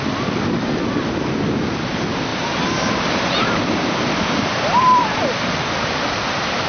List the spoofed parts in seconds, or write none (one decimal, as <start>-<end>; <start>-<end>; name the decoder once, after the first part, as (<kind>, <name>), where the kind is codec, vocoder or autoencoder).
2.3-5.2 (vocoder, BigVGAN v2)